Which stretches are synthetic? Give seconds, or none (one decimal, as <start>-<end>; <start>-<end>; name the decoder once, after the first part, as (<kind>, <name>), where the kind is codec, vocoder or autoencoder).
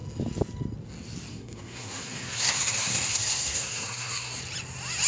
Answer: 1.3-4.4 (codec, SNAC)